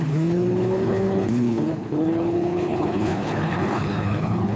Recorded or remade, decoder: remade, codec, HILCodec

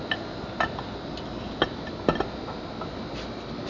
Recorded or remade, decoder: recorded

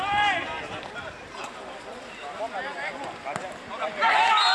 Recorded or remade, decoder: recorded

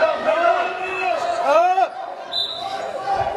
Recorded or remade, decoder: remade, vocoder, Vocos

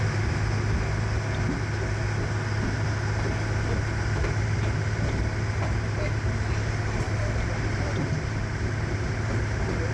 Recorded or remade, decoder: recorded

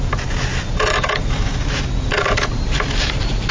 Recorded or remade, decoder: recorded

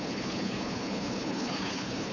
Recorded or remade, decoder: remade, codec, HILCodec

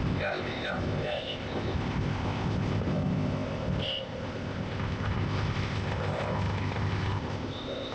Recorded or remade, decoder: remade, codec, ZipCodec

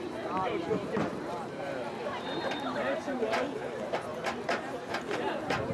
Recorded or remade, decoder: remade, vocoder, BigVGAN v2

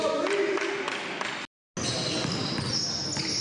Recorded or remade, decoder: recorded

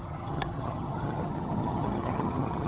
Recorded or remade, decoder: remade, vocoder, HiFi-GAN